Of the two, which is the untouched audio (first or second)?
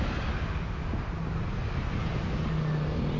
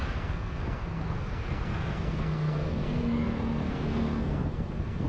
first